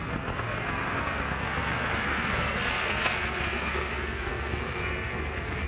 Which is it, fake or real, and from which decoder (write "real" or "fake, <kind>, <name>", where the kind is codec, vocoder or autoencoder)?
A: fake, codec, SNAC